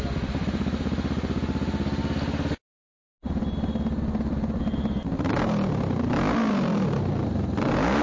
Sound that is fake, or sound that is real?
real